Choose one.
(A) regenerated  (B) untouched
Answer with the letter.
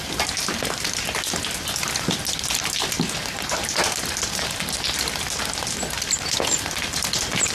B